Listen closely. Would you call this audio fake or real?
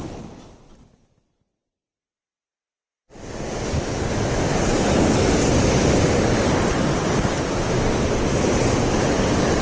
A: real